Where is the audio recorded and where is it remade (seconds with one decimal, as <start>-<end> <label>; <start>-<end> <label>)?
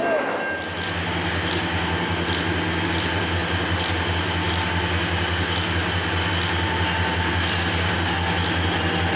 0.0-9.2 recorded